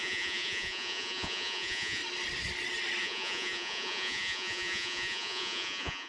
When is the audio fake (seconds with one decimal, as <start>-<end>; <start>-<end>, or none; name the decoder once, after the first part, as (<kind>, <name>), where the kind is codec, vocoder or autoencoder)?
0.0-2.0 (vocoder, Vocos); 3.0-6.1